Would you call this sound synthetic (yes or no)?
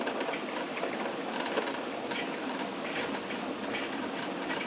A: yes